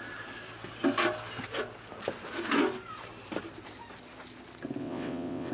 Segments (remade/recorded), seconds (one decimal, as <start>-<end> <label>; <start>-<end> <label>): 0.0-4.8 recorded; 4.8-5.5 remade